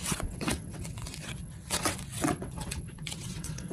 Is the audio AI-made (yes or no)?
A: yes